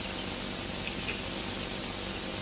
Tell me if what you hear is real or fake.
real